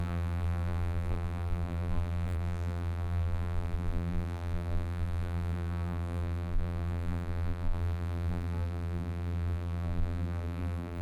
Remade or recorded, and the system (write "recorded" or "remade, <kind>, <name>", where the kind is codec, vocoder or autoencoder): remade, vocoder, BigVGAN v2